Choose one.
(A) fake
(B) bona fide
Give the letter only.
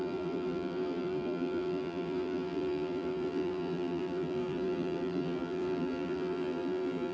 A